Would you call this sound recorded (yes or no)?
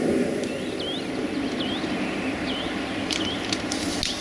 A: yes